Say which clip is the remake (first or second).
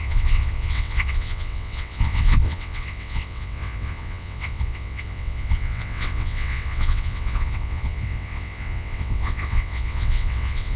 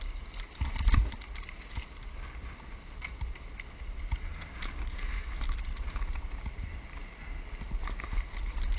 first